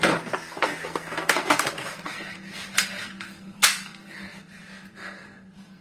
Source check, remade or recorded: remade